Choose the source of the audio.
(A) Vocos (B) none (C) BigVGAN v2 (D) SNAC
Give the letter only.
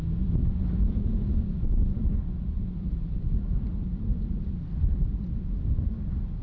B